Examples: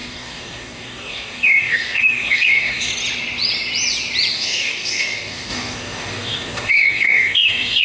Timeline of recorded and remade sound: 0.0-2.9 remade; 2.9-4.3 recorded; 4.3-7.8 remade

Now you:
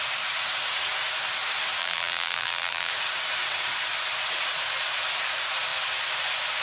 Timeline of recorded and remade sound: 0.0-1.8 recorded; 1.8-2.9 remade; 2.9-6.6 recorded

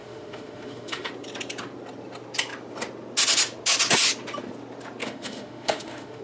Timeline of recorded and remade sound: 0.0-1.1 remade; 1.1-5.0 recorded; 5.0-6.2 remade

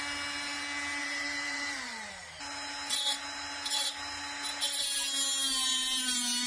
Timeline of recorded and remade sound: 0.0-1.0 recorded; 1.0-2.4 remade; 2.4-6.5 recorded